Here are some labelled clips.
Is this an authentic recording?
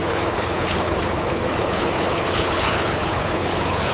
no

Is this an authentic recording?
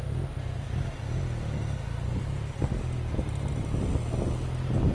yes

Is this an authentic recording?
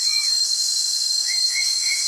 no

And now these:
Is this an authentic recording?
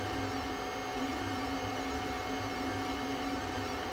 yes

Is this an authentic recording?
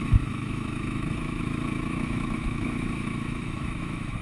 no